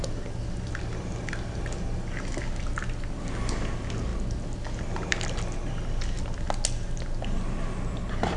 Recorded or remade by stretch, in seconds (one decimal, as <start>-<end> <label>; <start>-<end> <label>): 0.0-8.4 recorded